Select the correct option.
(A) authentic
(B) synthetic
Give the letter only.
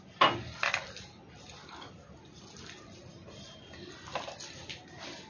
A